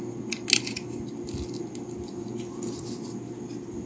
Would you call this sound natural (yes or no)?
yes